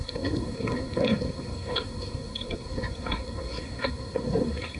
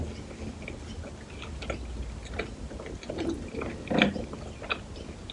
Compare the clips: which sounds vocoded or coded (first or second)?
first